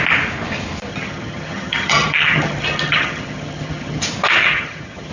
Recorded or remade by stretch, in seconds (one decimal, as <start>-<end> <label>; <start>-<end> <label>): 0.0-0.9 recorded; 0.9-4.0 remade; 4.0-4.4 recorded; 4.4-5.1 remade

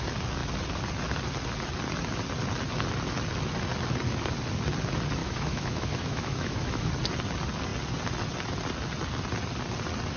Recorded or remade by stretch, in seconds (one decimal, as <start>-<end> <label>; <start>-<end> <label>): 0.0-5.2 recorded; 5.2-6.9 remade; 6.9-10.2 recorded

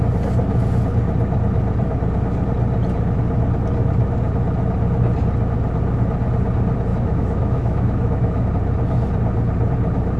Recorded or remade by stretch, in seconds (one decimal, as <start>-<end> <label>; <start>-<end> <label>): 0.0-6.9 recorded; 6.9-8.5 remade; 8.5-10.2 recorded